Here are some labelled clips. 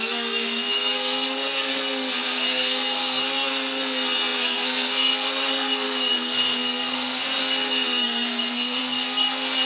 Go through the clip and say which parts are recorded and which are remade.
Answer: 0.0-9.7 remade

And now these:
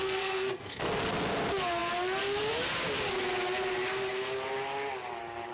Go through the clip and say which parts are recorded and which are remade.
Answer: 0.0-0.9 remade; 0.9-5.5 recorded

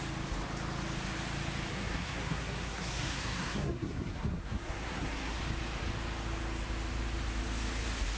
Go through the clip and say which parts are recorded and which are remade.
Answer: 0.0-1.7 recorded; 1.7-5.4 remade; 5.4-8.2 recorded

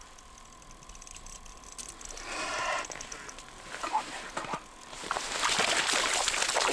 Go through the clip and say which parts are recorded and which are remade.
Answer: 0.0-6.7 recorded

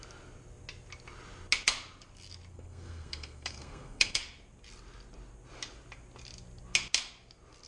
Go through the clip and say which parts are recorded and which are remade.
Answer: 0.0-2.5 recorded; 2.5-4.2 remade; 4.2-7.7 recorded

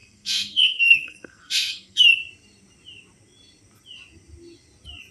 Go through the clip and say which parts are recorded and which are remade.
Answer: 0.0-2.0 remade; 2.0-5.1 recorded

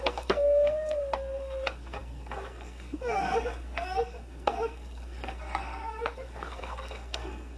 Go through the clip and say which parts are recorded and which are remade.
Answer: 0.0-7.6 remade